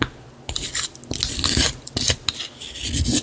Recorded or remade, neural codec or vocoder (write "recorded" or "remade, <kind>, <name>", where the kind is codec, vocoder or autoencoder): recorded